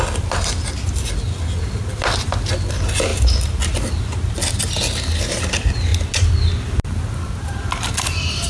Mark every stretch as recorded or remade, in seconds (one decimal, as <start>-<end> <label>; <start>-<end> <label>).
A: 0.0-8.5 recorded